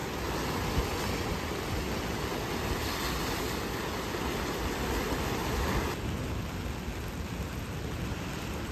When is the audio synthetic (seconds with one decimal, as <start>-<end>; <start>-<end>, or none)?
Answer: none